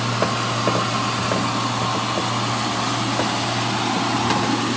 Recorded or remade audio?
recorded